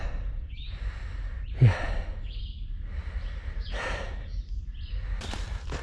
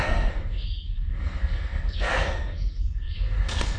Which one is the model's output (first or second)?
second